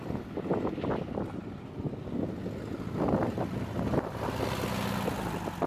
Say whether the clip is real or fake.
real